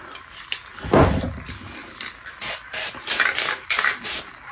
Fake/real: real